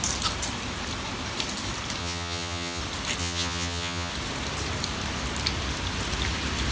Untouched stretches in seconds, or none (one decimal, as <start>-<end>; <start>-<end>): 0.0-2.0; 2.8-3.2; 4.1-6.7